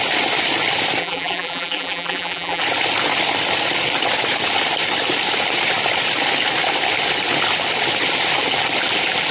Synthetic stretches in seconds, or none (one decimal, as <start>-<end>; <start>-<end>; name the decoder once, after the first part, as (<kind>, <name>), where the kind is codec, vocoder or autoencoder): 1.0-2.6 (vocoder, BigVGAN v2)